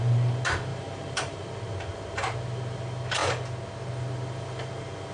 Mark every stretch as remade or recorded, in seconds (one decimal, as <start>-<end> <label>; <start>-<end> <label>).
0.0-0.7 recorded; 0.7-1.5 remade; 1.5-5.1 recorded